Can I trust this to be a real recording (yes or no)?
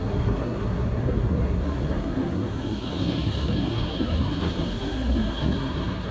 no